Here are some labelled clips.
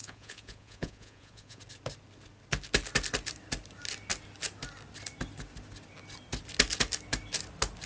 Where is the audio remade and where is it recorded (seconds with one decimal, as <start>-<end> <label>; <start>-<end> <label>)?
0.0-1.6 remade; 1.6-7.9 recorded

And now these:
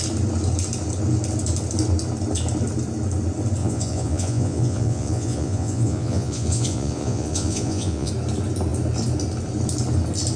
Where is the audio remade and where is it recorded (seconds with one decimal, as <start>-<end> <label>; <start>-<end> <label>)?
0.0-3.6 recorded; 3.6-8.1 remade; 8.1-10.4 recorded

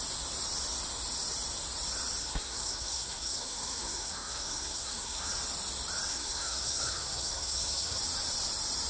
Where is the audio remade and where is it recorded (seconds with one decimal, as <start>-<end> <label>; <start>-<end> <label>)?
0.0-2.2 recorded; 2.2-5.3 remade; 5.3-6.1 recorded; 6.1-8.0 remade; 8.0-8.9 recorded

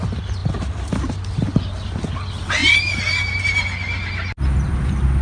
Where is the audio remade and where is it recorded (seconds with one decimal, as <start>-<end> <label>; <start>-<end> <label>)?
0.0-5.2 recorded

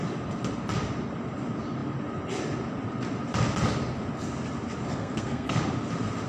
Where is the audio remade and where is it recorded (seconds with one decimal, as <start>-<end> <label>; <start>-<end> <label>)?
0.0-4.9 recorded; 4.9-5.6 remade; 5.6-6.3 recorded

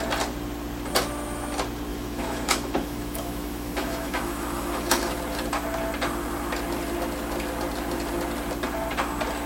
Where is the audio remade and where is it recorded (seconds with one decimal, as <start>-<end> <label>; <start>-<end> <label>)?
0.0-1.9 recorded; 1.9-5.2 remade; 5.2-9.5 recorded